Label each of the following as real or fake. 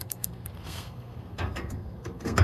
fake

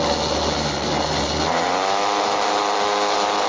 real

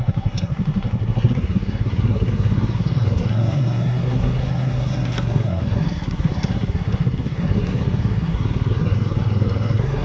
fake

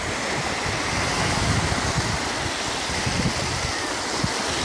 real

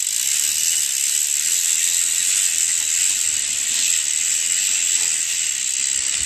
real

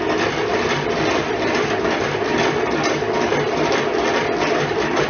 real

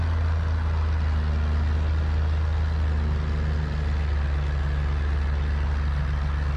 real